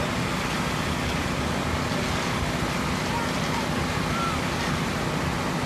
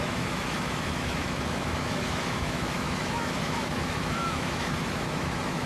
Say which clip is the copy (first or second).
second